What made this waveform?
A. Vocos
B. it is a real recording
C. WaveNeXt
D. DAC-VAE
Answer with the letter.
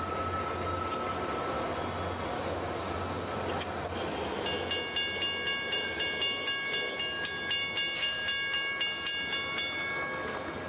B